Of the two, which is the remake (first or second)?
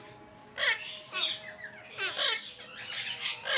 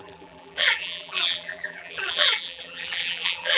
second